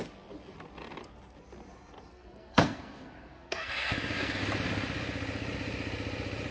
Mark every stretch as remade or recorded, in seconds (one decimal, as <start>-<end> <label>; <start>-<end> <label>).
0.0-2.1 recorded; 2.1-4.4 remade; 4.4-6.5 recorded